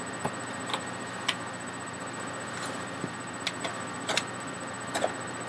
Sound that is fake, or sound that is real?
real